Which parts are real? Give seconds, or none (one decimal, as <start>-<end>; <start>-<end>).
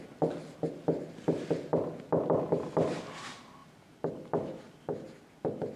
0.0-5.8